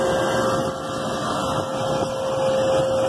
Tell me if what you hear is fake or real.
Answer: real